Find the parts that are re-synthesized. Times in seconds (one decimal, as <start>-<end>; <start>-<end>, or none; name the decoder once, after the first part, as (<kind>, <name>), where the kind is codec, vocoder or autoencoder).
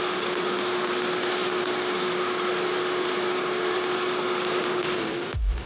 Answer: none